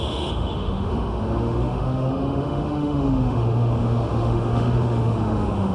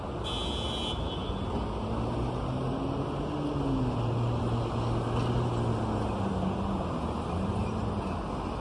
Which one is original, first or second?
second